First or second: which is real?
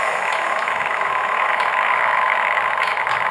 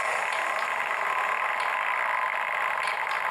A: second